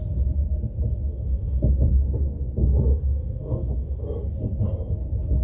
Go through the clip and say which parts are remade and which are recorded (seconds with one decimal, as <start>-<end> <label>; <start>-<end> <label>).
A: 0.0-1.1 recorded; 1.1-1.7 remade; 1.7-2.6 recorded; 2.6-4.0 remade; 4.0-5.4 recorded